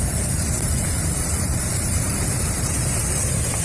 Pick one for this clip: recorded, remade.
remade